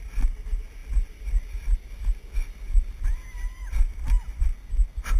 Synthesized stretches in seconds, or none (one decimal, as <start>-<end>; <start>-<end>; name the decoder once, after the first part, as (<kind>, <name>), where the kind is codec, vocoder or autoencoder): 0.0-5.2 (vocoder, BigVGAN v2)